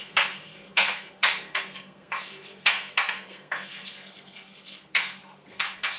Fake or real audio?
fake